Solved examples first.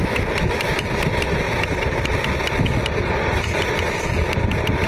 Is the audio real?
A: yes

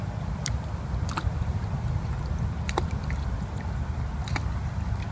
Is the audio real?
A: no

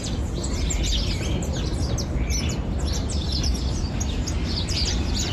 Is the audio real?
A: yes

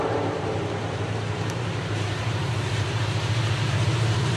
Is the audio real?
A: no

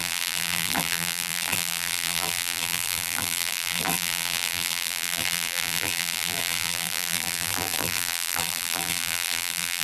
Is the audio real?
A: no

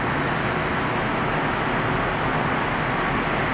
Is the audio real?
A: yes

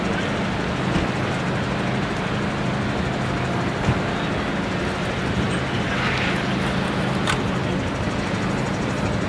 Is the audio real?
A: yes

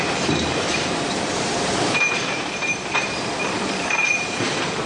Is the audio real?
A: no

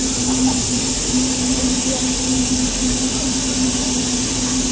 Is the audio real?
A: no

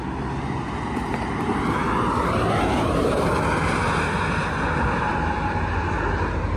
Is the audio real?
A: yes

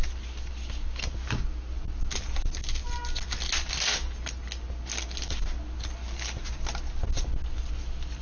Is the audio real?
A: yes